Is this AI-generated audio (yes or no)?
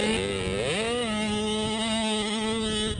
no